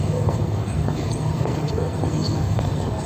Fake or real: fake